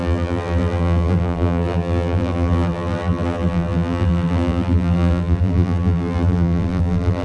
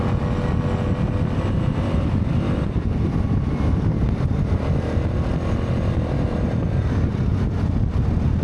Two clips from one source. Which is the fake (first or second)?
first